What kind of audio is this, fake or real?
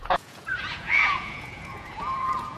fake